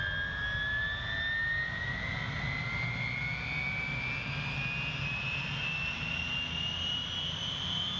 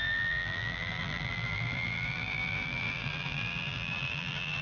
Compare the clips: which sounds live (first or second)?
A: first